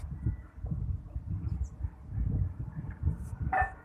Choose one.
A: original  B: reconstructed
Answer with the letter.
B